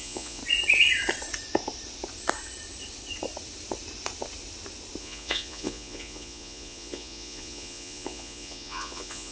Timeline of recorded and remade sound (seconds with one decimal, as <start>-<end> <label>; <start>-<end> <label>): 0.0-0.4 remade; 0.4-5.0 recorded; 5.0-9.3 remade

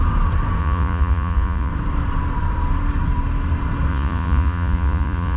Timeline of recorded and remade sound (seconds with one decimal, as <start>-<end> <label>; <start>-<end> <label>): 0.0-0.6 recorded; 0.6-1.7 remade; 1.7-3.9 recorded; 3.9-5.4 remade

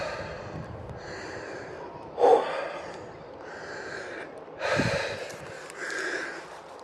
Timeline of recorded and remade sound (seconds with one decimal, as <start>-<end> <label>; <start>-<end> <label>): 0.0-6.8 recorded

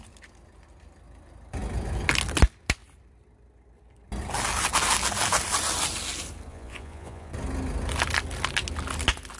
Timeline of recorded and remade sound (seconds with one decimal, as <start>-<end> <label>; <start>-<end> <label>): 0.0-6.5 recorded; 6.5-7.3 remade; 7.3-9.4 recorded

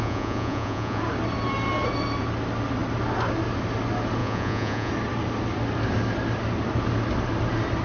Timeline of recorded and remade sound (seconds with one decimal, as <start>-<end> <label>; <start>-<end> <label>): 0.0-1.0 remade; 1.0-4.2 recorded; 4.2-4.9 remade; 4.9-7.8 recorded

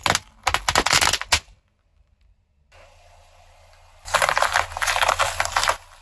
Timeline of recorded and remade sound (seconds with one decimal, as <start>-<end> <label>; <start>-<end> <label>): 0.0-6.0 recorded

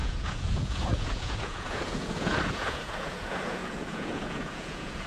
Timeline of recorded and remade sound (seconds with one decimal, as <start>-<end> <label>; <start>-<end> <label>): 0.0-5.1 remade